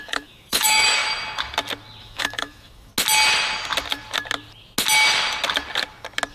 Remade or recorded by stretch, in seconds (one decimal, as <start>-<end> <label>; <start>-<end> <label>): 0.0-1.0 remade; 1.0-2.0 recorded; 2.0-2.9 remade; 2.9-6.3 recorded